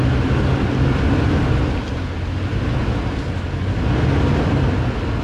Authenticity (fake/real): real